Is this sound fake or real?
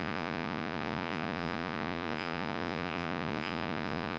fake